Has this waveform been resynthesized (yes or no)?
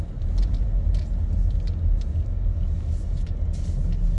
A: no